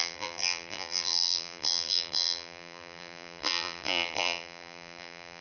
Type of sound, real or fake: fake